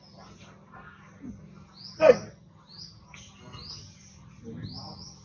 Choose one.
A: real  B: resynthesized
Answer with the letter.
A